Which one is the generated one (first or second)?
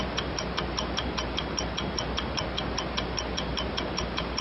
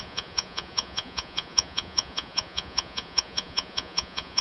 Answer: second